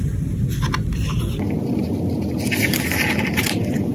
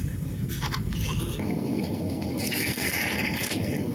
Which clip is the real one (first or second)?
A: first